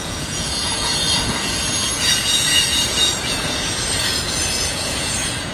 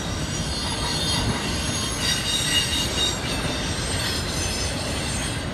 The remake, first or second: first